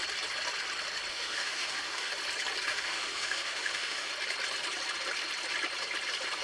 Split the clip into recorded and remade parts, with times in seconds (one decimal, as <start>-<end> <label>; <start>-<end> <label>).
0.0-1.1 recorded; 1.1-2.1 remade; 2.1-2.7 recorded; 2.7-4.1 remade; 4.1-6.4 recorded